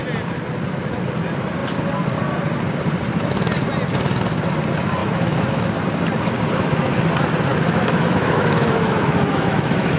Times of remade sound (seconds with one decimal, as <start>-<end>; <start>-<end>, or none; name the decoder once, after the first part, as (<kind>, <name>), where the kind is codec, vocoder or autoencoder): 5.0-5.7 (autoencoder, DAC-VAE); 7.5-10.0